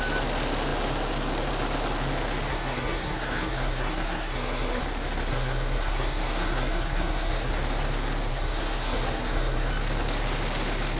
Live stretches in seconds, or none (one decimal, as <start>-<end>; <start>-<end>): 0.0-2.5; 4.8-5.3; 7.5-8.3; 9.7-11.0